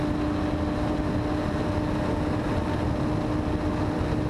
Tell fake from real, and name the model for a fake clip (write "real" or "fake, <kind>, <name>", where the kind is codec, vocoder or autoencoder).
real